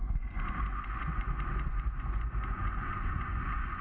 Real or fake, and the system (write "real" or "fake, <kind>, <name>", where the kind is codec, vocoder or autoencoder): fake, vocoder, Vocos